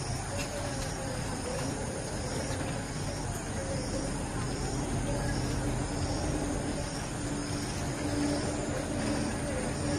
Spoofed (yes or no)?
no